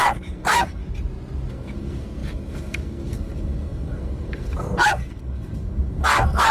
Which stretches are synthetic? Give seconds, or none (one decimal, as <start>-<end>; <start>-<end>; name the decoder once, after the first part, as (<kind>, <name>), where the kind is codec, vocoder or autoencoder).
0.0-0.8 (codec, SNAC); 1.5-6.5